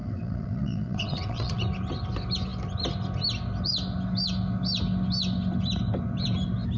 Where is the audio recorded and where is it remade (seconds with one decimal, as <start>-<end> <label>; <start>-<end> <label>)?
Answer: 0.0-1.6 remade; 1.6-6.8 recorded